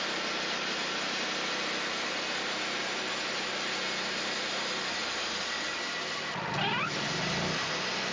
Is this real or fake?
real